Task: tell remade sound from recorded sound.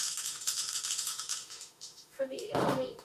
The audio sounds remade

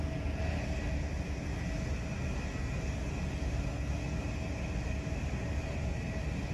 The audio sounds recorded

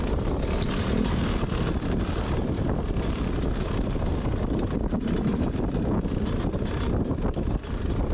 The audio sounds recorded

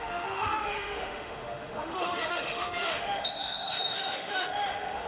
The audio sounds remade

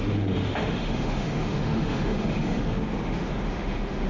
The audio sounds remade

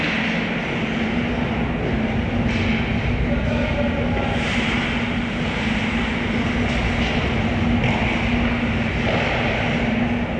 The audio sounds recorded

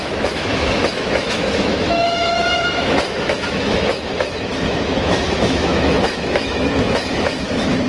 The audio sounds remade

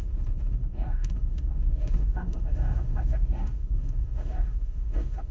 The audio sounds remade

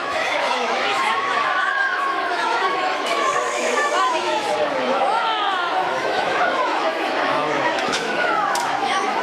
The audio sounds remade